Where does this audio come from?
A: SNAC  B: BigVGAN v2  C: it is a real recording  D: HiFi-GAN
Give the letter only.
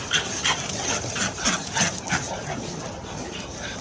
C